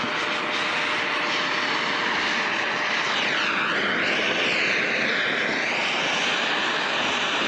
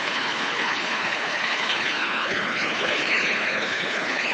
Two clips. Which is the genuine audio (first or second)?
first